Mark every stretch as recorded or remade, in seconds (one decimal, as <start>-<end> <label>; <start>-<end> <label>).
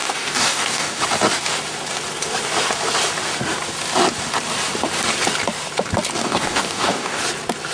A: 0.0-1.0 remade; 1.0-6.2 recorded; 6.2-7.2 remade; 7.2-7.7 recorded